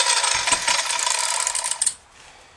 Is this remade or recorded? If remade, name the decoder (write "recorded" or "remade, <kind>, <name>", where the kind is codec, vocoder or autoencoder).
recorded